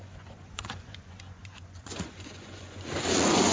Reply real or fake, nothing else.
fake